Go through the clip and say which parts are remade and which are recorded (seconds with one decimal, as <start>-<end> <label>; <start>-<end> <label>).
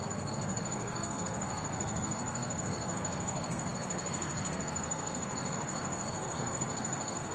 0.0-7.3 remade